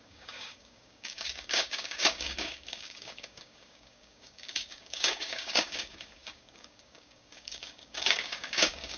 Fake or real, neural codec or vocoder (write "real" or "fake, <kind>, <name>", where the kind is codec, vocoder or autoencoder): fake, codec, DAC